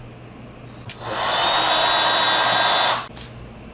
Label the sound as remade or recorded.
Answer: recorded